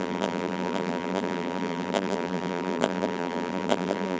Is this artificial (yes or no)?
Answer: yes